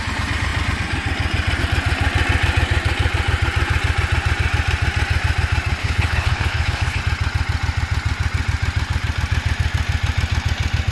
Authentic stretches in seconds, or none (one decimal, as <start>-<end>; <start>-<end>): 0.0-5.8; 7.0-10.9